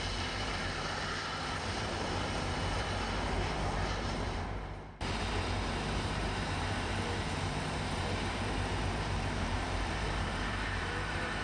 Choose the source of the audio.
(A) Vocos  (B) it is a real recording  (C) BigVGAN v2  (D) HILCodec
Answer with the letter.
C